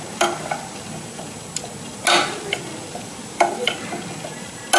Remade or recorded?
recorded